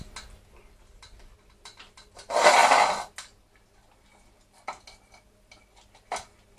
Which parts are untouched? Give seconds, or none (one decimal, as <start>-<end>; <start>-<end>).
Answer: 0.0-6.6